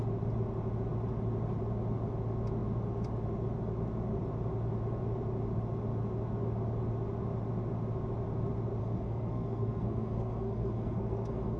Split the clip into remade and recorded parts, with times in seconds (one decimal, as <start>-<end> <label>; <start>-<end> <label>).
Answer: 0.0-8.8 recorded; 8.8-11.6 remade